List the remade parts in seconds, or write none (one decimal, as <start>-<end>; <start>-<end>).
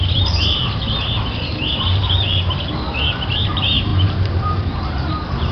0.0-0.6; 1.4-5.5